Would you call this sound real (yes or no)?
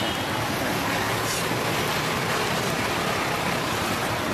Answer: yes